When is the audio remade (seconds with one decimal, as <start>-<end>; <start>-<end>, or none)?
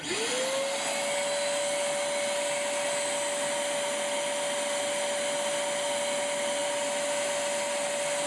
none